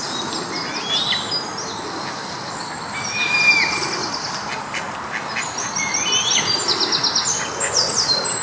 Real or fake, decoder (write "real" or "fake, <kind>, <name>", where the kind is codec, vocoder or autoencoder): real